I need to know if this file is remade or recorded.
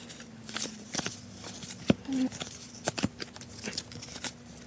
recorded